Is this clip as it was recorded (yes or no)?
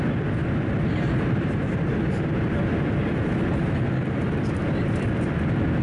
no